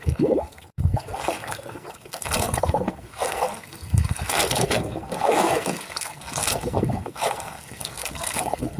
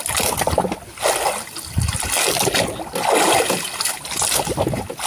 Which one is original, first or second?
second